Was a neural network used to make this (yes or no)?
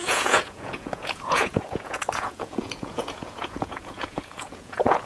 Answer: yes